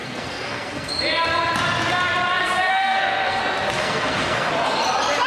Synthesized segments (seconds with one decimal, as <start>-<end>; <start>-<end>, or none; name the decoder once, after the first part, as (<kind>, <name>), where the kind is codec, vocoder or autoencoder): 0.0-0.9 (codec, SNAC); 2.4-3.4; 3.8-4.5